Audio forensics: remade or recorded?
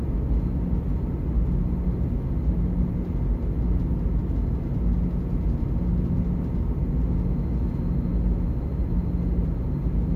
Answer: recorded